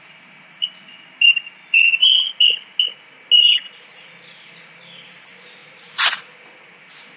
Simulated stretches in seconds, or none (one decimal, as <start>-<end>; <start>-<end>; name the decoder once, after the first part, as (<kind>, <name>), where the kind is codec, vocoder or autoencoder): none